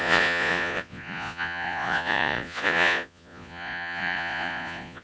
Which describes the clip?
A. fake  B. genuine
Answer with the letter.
A